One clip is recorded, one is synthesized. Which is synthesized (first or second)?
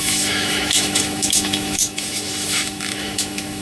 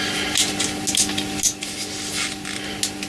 first